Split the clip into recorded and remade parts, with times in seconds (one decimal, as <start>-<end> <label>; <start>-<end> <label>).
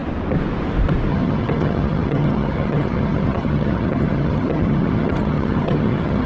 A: 0.0-1.1 recorded; 1.1-6.3 remade